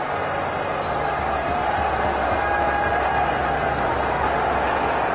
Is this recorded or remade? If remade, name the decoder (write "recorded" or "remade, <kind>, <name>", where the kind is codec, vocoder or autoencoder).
recorded